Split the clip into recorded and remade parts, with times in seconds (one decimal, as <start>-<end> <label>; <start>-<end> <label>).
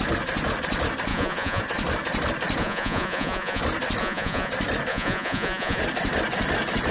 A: 0.0-1.1 recorded; 1.1-1.6 remade; 1.6-2.6 recorded; 2.6-3.6 remade; 3.6-4.0 recorded; 4.0-4.5 remade; 4.5-4.9 recorded; 4.9-5.8 remade; 5.8-6.9 recorded